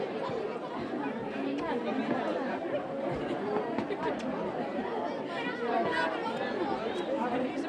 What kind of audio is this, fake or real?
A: real